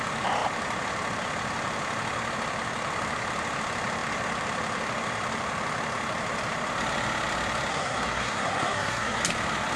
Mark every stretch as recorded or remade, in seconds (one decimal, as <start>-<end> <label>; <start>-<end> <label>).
0.0-7.7 recorded; 7.7-9.2 remade; 9.2-9.8 recorded